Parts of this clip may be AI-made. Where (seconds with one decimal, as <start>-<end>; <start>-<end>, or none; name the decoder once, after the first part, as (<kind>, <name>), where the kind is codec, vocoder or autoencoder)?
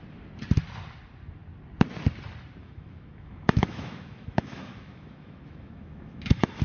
2.6-6.6 (autoencoder, DAC-VAE)